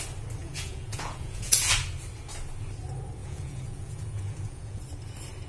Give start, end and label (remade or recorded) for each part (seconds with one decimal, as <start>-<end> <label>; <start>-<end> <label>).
0.0-0.4 recorded; 0.4-1.7 remade; 1.7-3.2 recorded; 3.2-4.8 remade; 4.8-5.5 recorded

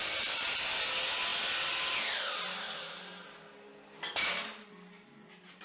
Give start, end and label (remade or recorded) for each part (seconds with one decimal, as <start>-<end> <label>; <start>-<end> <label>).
0.0-5.6 recorded